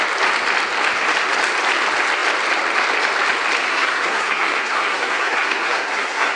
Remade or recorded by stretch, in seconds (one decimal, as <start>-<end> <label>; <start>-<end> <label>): 0.0-3.7 recorded; 3.7-6.4 remade